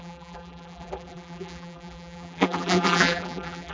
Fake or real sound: fake